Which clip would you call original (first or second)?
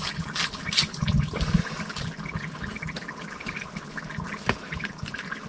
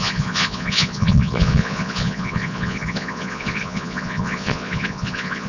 first